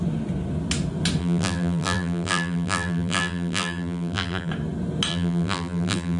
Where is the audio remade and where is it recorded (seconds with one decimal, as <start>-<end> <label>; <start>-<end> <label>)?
0.0-1.2 recorded; 1.2-4.5 remade; 4.5-5.1 recorded; 5.1-6.2 remade